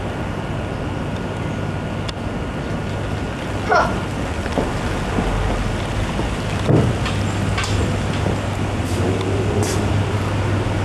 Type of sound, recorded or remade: recorded